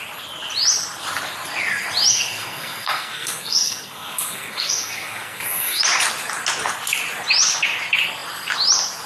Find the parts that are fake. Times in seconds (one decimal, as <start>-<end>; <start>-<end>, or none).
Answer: 2.1-5.8

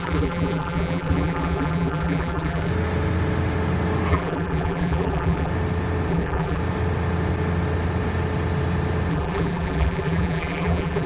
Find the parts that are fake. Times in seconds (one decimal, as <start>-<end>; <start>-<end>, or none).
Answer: 0.0-2.7; 4.1-5.5; 6.1-6.6; 9.1-11.1

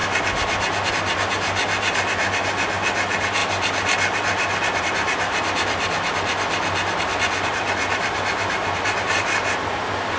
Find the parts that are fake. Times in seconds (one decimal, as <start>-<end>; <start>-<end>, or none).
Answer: none

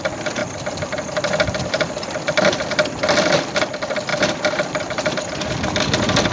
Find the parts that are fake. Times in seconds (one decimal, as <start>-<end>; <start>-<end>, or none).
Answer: 0.4-3.6; 4.1-5.5

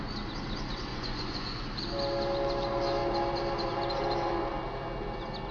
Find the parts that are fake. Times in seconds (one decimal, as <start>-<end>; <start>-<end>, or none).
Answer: 0.9-1.6

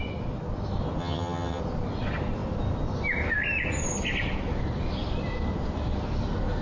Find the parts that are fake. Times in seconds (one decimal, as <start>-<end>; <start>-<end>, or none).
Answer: 1.0-1.6

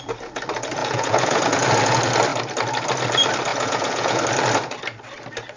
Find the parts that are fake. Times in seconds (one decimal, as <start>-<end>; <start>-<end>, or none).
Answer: 0.8-1.7; 3.5-4.2